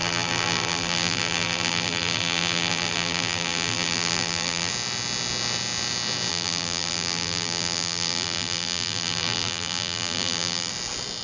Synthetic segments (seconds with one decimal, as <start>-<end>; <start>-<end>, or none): 0.0-4.7; 6.3-10.7